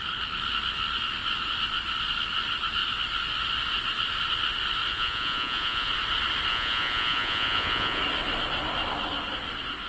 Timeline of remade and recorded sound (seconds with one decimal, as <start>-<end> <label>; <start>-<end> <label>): 0.0-4.9 recorded; 4.9-5.9 remade; 5.9-6.5 recorded; 6.5-8.0 remade; 8.0-9.9 recorded